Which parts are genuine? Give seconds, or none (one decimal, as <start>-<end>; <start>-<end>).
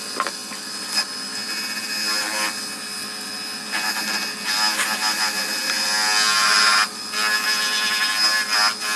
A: 0.0-9.0